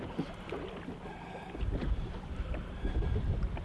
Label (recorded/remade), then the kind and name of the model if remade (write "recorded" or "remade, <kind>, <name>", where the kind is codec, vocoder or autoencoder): recorded